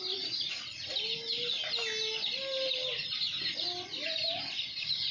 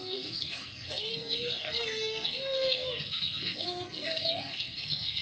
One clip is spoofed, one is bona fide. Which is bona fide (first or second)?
first